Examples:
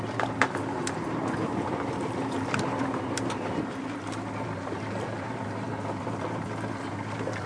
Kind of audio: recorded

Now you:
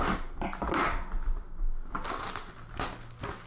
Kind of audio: recorded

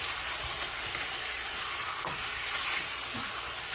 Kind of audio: recorded